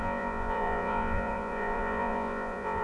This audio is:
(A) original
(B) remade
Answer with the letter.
B